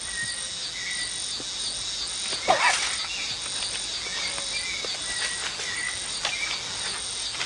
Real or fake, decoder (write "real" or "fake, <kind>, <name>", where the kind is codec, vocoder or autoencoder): real